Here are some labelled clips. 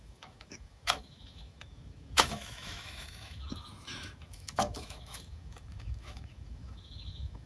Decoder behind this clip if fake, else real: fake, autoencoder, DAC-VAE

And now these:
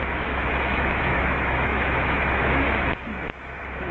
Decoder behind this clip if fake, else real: fake, autoencoder, DAC-VAE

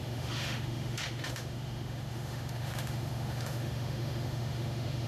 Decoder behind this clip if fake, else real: fake, autoencoder, DAC-VAE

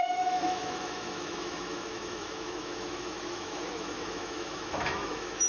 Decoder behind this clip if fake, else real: fake, autoencoder, DAC-VAE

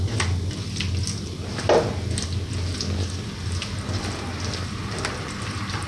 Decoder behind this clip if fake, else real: real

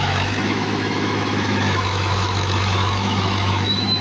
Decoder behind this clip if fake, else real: fake, autoencoder, DAC-VAE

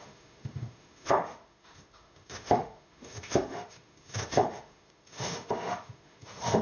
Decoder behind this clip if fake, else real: fake, autoencoder, DAC-VAE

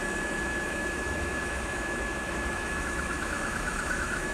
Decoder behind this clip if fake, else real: fake, autoencoder, DAC-VAE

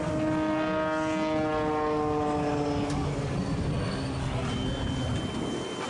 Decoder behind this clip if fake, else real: real